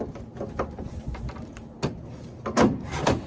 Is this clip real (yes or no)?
yes